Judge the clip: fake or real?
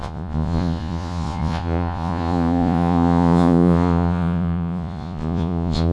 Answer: fake